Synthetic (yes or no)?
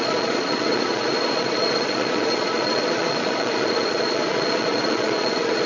yes